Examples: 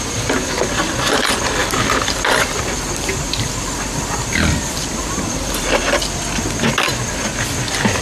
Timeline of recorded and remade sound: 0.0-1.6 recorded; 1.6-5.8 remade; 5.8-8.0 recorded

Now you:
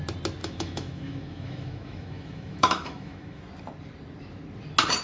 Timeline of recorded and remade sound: 0.0-0.4 recorded; 0.4-3.4 remade; 3.4-5.0 recorded

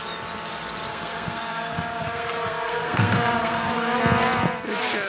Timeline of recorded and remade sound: 0.0-0.9 recorded; 0.9-4.0 remade; 4.0-5.1 recorded